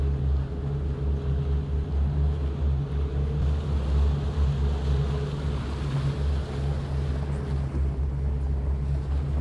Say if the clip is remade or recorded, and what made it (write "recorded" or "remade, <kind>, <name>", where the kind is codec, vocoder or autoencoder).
recorded